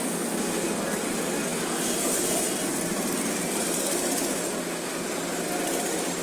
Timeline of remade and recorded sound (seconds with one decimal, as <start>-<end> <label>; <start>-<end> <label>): 0.0-6.2 recorded